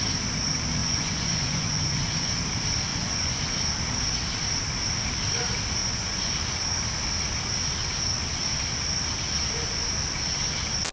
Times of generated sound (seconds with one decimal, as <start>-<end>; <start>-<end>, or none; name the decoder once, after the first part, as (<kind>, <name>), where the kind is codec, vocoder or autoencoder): 0.8-2.4 (vocoder, Vocos); 2.9-3.4; 5.8-6.3